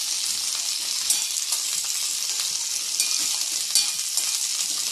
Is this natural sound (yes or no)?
yes